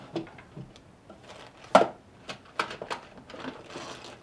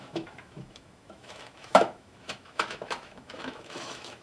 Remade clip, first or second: second